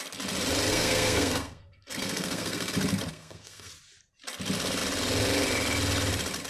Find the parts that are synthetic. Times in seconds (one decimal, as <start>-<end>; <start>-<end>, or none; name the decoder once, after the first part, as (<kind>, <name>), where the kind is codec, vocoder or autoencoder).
0.7-2.7 (codec, SNAC); 3.1-3.7